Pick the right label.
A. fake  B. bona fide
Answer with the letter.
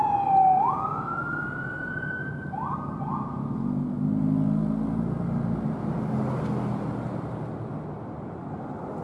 B